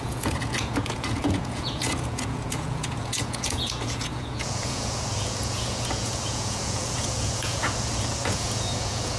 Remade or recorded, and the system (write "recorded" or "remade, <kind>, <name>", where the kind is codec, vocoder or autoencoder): remade, vocoder, Vocos